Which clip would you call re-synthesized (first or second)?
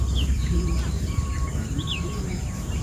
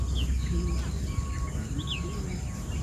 first